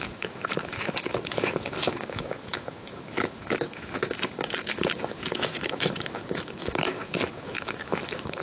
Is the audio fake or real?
fake